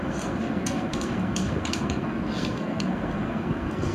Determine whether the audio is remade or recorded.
remade